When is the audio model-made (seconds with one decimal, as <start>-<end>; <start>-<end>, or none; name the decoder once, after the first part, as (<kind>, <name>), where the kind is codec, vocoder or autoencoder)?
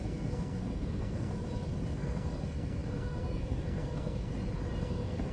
0.0-1.3 (codec, SNAC); 1.9-4.3; 4.8-5.3